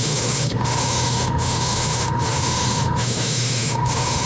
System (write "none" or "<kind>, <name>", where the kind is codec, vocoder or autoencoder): autoencoder, DAC-VAE